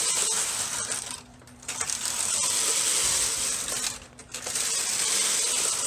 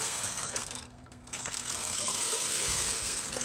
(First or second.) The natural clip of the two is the first